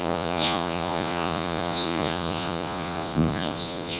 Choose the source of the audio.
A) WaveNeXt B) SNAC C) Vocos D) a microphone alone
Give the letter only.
C